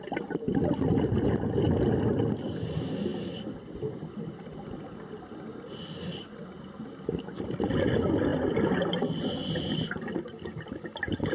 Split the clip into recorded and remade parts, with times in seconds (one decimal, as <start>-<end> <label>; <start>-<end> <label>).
0.0-11.3 recorded